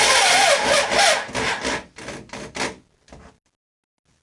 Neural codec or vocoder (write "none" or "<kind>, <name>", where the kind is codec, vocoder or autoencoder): none